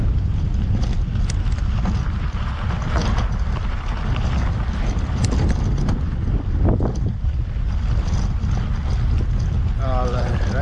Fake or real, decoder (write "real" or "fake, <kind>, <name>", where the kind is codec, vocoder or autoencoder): real